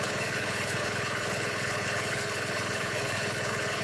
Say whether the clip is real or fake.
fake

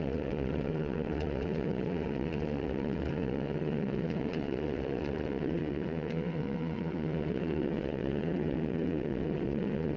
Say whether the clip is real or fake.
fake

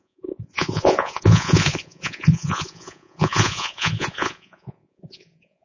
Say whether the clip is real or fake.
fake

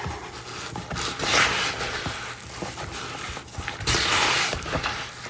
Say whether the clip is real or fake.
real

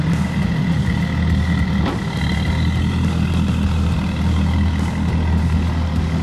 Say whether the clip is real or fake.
real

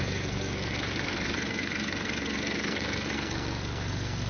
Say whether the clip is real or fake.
fake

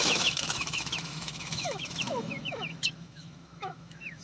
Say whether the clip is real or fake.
fake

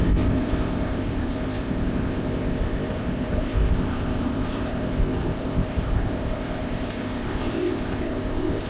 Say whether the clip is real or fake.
fake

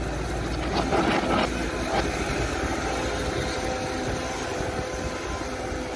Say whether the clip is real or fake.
real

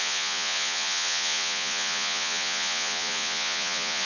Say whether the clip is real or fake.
fake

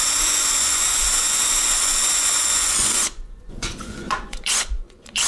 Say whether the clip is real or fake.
fake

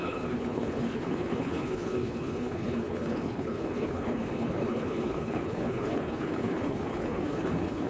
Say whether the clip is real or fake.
fake